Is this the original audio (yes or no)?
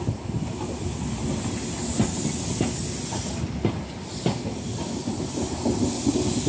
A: yes